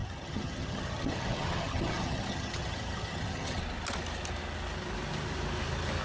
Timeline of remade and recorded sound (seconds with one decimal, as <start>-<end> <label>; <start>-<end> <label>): 0.0-3.6 remade; 3.6-6.0 recorded